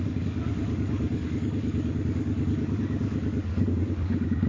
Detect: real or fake fake